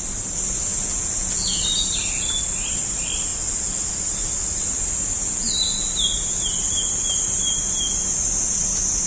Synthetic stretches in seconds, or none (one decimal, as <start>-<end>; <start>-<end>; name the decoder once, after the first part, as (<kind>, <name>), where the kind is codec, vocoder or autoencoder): 0.7-1.6 (vocoder, Vocos); 5.1-5.9